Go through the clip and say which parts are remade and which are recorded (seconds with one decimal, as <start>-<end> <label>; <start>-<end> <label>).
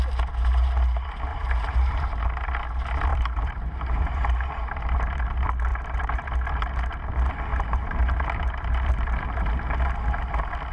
0.0-1.3 recorded; 1.3-2.2 remade; 2.2-3.1 recorded; 3.1-5.2 remade; 5.2-5.7 recorded; 5.7-6.3 remade; 6.3-7.5 recorded; 7.5-9.5 remade; 9.5-10.7 recorded